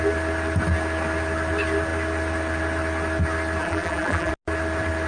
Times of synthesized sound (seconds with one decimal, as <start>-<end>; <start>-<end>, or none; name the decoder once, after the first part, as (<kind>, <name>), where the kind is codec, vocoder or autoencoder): 3.6-4.3 (vocoder, BigVGAN v2)